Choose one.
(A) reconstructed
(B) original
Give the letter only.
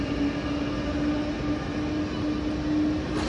B